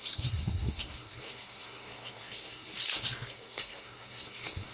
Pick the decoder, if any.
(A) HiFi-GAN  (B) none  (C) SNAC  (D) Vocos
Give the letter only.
C